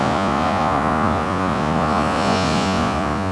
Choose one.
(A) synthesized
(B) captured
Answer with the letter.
A